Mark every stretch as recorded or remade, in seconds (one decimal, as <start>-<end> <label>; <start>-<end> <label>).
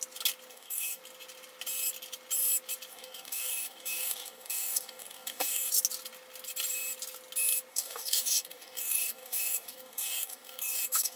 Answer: 0.0-0.5 recorded; 0.5-1.0 remade; 1.0-2.9 recorded; 2.9-5.7 remade; 5.7-7.7 recorded; 7.7-11.2 remade